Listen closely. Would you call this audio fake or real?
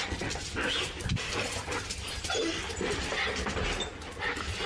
real